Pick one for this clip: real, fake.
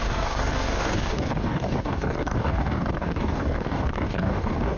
fake